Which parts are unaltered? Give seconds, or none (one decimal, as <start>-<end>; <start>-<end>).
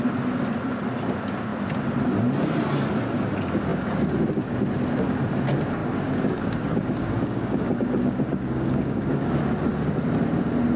0.0-5.8; 9.4-10.8